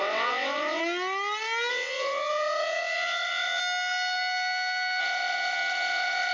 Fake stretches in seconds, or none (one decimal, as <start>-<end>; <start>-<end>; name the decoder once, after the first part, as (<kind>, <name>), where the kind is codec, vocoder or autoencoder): 0.0-0.8 (vocoder, WaveNeXt); 1.7-3.6; 5.0-6.3